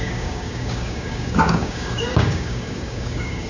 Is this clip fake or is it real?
fake